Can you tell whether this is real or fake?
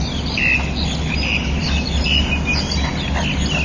real